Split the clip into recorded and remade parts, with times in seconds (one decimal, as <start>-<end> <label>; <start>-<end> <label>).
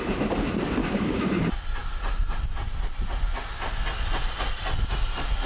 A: 0.0-0.8 recorded; 0.8-1.4 remade; 1.4-5.5 recorded